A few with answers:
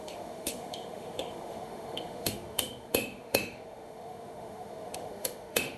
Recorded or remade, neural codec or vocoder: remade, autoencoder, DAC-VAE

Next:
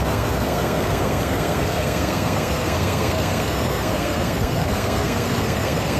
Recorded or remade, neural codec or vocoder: remade, codec, SNAC